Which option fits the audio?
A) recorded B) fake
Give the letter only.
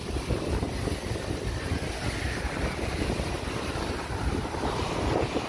A